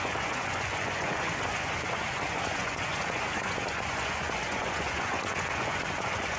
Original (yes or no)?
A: no